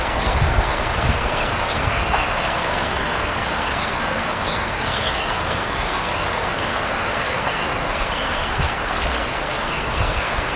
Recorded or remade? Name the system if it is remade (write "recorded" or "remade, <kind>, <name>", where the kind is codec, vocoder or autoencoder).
remade, codec, SNAC